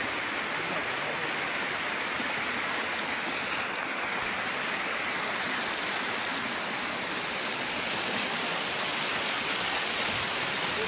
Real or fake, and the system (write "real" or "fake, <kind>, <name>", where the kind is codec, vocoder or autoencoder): real